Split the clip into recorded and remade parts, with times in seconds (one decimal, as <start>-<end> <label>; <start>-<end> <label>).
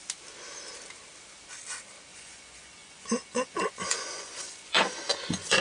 0.0-2.1 recorded; 2.1-5.6 remade